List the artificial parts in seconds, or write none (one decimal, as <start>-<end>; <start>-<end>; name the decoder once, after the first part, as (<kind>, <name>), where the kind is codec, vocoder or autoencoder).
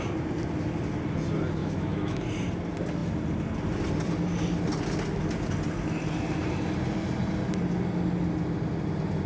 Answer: 1.6-2.2 (autoencoder, DAC-VAE)